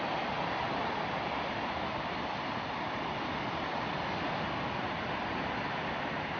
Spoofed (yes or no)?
no